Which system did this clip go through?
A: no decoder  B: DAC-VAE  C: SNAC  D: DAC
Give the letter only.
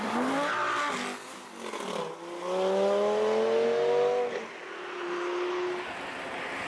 A